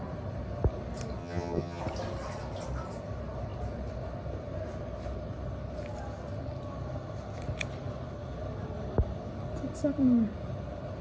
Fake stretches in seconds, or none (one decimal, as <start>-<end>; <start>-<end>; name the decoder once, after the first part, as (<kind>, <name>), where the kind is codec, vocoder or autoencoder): 1.2-1.8 (vocoder, HiFi-GAN)